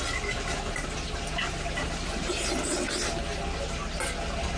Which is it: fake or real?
real